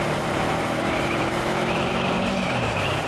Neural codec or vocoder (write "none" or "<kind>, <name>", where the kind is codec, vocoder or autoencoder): vocoder, BigVGAN v2